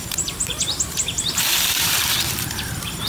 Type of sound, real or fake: fake